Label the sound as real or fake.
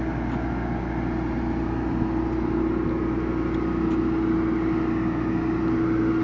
real